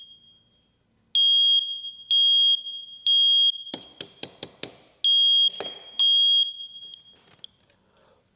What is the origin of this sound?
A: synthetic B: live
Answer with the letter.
B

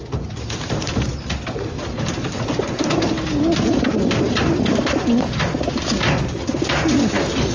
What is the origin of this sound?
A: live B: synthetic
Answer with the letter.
A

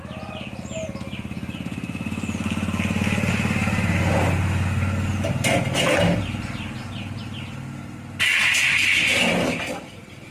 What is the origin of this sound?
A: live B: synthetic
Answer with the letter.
A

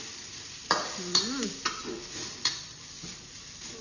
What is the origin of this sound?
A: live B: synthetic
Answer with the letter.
B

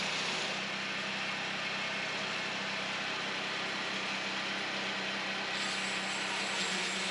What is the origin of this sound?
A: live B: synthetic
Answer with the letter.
A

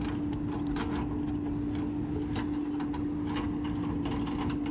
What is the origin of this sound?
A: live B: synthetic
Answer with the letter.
A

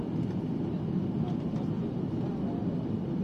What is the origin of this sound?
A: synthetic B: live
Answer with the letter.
B